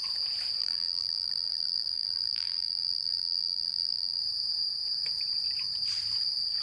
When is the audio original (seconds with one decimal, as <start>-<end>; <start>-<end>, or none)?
0.0-0.6; 4.2-6.6